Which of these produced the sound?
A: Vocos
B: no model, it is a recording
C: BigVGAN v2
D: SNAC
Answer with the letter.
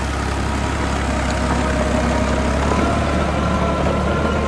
B